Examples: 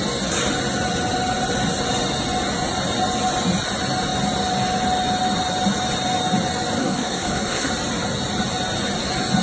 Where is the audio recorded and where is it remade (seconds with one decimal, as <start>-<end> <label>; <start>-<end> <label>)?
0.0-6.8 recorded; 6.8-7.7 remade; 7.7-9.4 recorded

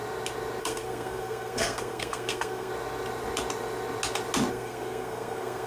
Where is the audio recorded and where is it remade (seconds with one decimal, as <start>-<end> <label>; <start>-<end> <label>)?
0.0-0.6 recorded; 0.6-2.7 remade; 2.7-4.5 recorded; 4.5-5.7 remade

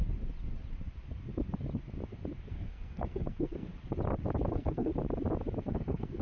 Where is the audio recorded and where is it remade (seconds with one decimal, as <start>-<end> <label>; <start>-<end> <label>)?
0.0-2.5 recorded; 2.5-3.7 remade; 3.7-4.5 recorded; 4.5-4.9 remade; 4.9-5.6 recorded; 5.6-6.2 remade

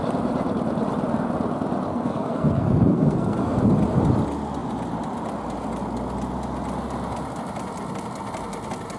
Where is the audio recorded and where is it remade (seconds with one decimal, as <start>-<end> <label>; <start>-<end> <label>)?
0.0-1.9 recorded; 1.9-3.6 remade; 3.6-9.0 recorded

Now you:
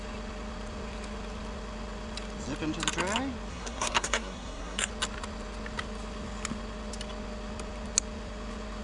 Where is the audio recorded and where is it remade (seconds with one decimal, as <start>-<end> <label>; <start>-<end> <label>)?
0.0-3.5 recorded; 3.5-4.9 remade; 4.9-8.8 recorded

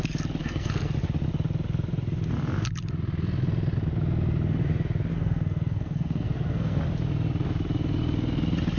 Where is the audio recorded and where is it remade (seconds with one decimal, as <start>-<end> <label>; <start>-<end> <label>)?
0.0-0.4 recorded; 0.4-0.9 remade; 0.9-5.1 recorded; 5.1-6.8 remade; 6.8-8.8 recorded

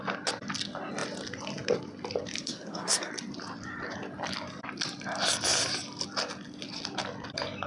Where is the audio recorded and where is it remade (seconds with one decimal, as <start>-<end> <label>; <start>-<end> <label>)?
0.0-2.4 recorded; 2.4-3.1 remade; 3.1-7.7 recorded

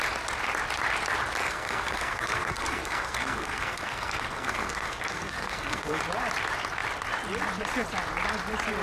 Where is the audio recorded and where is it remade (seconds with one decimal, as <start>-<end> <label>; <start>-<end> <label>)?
0.0-1.4 recorded; 1.4-6.0 remade; 6.0-8.8 recorded